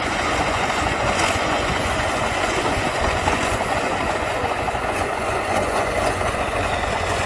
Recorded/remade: remade